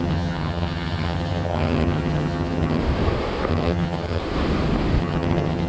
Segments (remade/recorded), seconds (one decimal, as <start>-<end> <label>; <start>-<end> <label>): 0.0-2.8 remade; 2.8-3.5 recorded; 3.5-4.2 remade; 4.2-5.0 recorded; 5.0-5.7 remade